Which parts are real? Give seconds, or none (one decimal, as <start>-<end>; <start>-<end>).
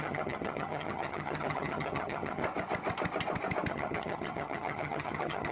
2.4-3.7